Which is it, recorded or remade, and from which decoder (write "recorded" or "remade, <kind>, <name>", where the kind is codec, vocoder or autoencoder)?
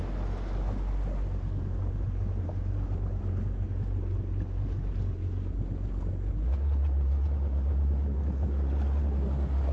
recorded